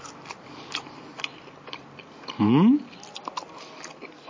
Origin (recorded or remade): recorded